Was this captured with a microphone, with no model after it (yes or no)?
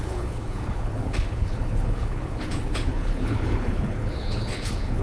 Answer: no